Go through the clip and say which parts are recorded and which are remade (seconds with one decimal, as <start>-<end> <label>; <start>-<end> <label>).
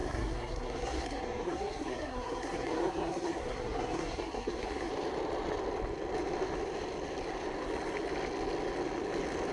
0.0-4.9 remade; 4.9-9.5 recorded